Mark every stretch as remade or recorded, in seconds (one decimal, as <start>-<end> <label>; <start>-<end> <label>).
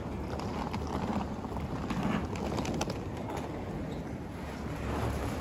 0.0-5.4 recorded